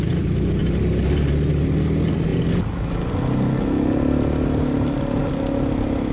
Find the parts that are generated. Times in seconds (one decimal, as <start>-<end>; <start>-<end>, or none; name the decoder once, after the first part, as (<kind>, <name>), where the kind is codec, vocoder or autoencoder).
0.6-1.5 (vocoder, BigVGAN v2)